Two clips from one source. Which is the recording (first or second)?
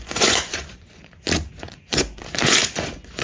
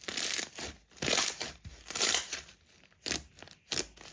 second